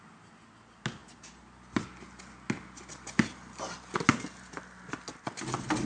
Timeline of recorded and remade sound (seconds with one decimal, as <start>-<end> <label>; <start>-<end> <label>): 0.0-5.9 recorded